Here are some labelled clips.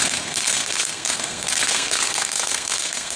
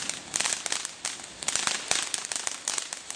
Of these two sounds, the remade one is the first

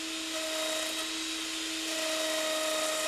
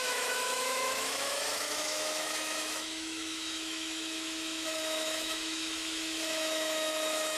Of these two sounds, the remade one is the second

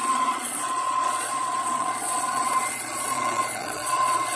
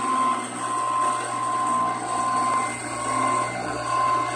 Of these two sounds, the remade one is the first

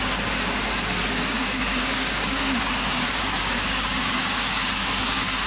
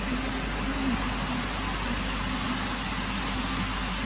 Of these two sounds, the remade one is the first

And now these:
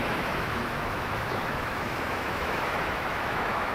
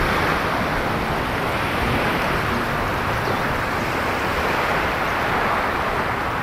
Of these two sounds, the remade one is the first